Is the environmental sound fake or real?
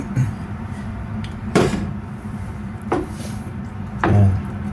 fake